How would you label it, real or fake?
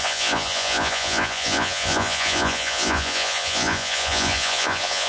fake